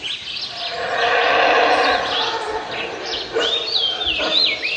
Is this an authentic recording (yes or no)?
yes